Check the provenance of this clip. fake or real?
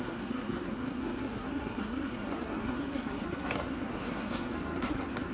fake